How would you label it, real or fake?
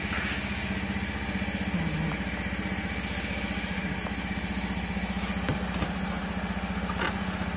real